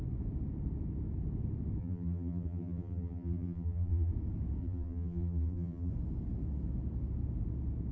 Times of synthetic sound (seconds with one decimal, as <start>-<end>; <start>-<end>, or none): 1.8-4.1; 4.6-5.9